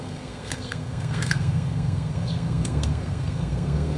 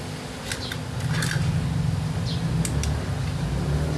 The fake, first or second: first